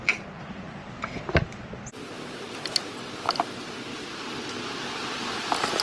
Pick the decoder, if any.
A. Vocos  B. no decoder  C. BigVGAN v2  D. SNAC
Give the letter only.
B